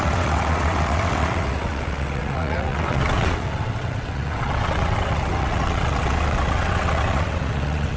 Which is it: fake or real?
fake